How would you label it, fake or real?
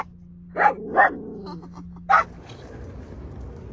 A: real